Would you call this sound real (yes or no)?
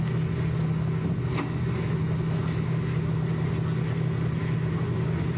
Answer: yes